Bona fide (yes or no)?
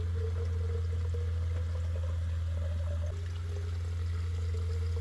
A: yes